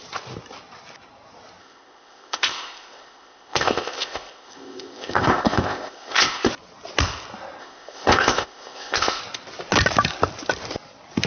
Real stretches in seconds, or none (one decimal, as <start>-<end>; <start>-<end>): 0.0-1.6; 6.5-7.6; 9.2-11.3